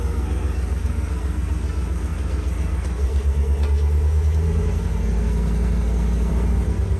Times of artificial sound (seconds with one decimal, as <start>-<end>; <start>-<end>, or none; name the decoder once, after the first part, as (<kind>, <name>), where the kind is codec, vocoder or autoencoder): 0.0-7.0 (codec, SNAC)